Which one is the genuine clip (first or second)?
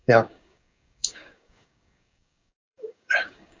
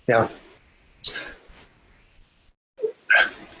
second